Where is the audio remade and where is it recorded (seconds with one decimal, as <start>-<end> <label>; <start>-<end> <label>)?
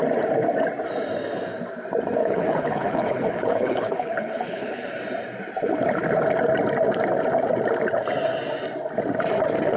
0.0-2.2 recorded; 2.2-4.9 remade; 4.9-9.8 recorded